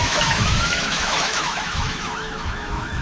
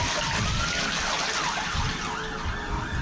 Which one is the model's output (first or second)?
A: first